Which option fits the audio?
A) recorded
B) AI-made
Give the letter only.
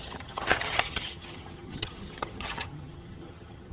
B